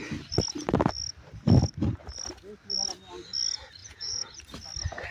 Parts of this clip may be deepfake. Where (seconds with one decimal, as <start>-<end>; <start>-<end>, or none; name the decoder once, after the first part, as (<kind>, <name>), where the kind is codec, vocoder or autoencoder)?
3.8-4.4 (vocoder, Vocos)